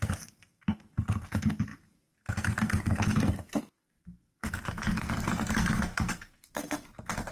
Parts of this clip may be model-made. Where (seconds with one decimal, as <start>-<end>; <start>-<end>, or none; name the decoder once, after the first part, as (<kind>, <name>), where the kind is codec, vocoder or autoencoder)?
0.0-7.3 (codec, SNAC)